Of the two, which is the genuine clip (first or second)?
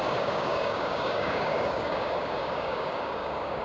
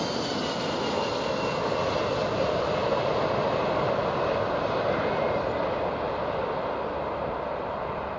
second